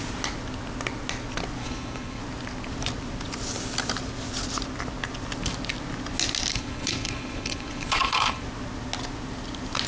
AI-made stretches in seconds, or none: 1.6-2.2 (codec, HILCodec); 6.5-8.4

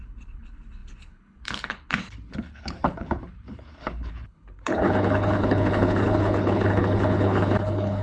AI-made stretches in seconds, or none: 0.0-8.0 (codec, HILCodec)

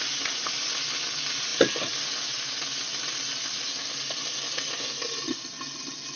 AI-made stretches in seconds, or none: none

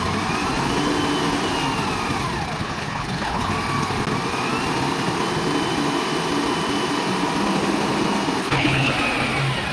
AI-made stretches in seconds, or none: 2.6-3.5 (codec, HILCodec); 8.4-8.9